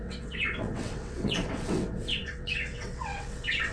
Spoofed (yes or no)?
yes